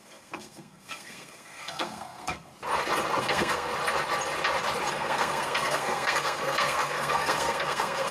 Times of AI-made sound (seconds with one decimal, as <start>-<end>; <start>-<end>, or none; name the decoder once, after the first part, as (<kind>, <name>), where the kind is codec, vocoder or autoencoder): 0.0-2.5 (codec, SNAC); 3.2-3.7; 4.9-8.1